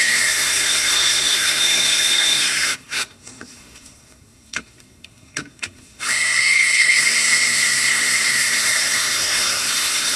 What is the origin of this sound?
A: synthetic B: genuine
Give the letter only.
A